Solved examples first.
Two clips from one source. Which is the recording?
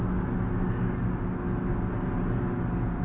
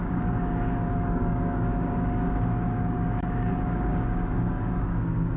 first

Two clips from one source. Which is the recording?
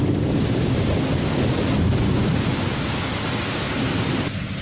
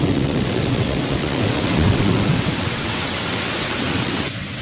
first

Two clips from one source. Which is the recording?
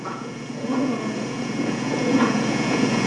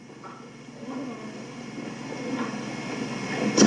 second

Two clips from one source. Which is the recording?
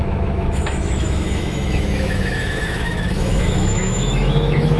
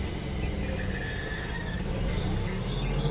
second